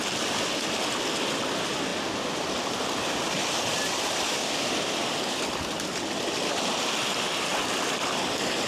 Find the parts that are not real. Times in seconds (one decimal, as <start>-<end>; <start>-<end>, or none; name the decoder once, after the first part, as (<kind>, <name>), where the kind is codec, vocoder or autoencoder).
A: none